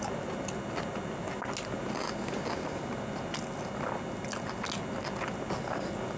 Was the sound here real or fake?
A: real